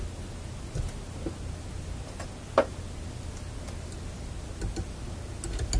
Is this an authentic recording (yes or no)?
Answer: yes